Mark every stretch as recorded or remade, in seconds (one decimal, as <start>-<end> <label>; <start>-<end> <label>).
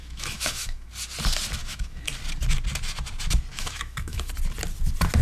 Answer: 0.0-0.9 remade; 0.9-1.6 recorded; 1.6-2.1 remade; 2.1-3.5 recorded; 3.5-4.3 remade; 4.3-5.2 recorded